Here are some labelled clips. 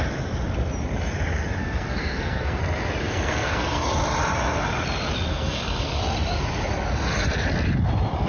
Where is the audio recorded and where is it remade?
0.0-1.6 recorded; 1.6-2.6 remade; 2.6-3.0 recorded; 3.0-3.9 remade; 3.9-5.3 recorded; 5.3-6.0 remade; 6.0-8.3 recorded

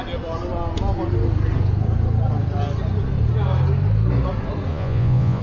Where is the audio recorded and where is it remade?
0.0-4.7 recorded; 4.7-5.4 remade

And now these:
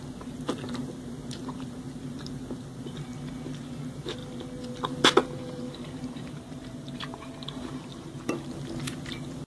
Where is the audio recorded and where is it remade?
0.0-5.2 recorded; 5.2-8.5 remade; 8.5-9.5 recorded

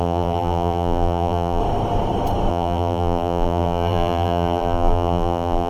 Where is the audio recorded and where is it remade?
0.0-1.6 remade; 1.6-2.5 recorded; 2.5-5.7 remade

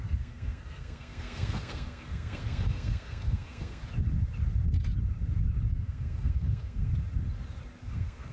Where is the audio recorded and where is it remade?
0.0-3.8 remade; 3.8-5.7 recorded; 5.7-6.9 remade; 6.9-7.8 recorded; 7.8-8.3 remade

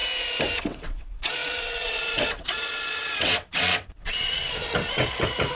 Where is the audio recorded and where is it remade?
0.0-0.6 recorded; 0.6-5.5 remade

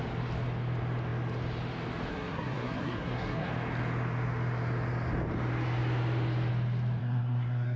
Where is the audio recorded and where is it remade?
0.0-2.1 recorded; 2.1-3.5 remade; 3.5-7.0 recorded; 7.0-7.8 remade

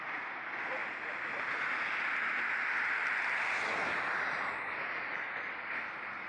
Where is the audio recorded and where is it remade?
0.0-6.3 recorded